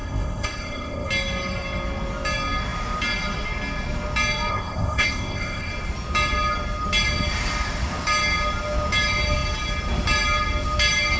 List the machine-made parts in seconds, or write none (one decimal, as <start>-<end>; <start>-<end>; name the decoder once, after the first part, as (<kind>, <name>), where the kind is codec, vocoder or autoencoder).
0.0-1.1 (codec, ZipCodec); 4.5-5.7